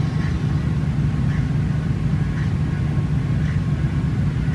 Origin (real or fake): real